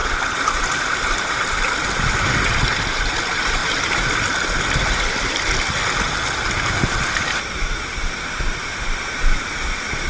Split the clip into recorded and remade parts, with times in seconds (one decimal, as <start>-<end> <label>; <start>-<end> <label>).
0.0-3.6 remade; 3.6-7.2 recorded; 7.2-10.1 remade